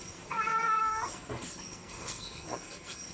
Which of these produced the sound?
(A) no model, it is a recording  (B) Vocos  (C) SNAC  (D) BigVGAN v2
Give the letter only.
C